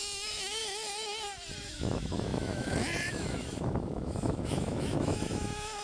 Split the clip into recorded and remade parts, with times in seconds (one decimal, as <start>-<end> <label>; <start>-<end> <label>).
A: 0.0-0.6 remade; 0.6-1.6 recorded; 1.6-5.8 remade